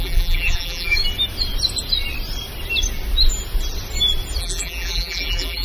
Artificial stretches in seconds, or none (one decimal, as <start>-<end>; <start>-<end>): 0.0-1.0; 4.4-5.6